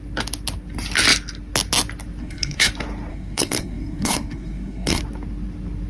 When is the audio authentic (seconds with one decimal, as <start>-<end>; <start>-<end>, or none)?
0.0-2.2; 2.7-3.1; 5.0-5.9